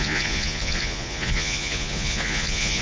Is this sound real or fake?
fake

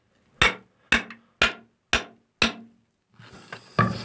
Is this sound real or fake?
real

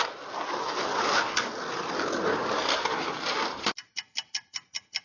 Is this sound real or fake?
real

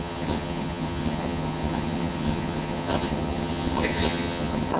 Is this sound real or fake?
fake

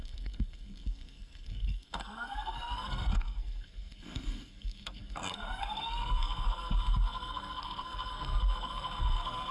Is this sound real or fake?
fake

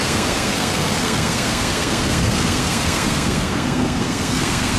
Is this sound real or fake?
fake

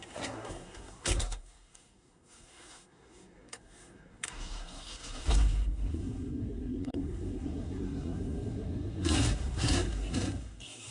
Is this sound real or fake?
fake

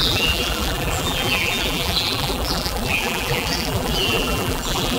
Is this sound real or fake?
fake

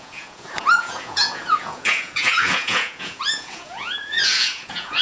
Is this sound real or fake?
fake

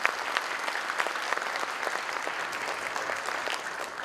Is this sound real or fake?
real